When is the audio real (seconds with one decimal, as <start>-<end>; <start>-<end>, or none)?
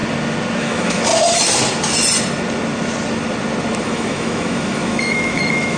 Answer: 0.0-0.6; 1.1-3.8